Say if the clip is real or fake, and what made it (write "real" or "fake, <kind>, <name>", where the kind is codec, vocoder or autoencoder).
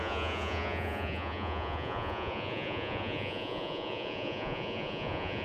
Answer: fake, vocoder, Vocos